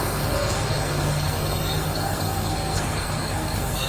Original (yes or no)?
no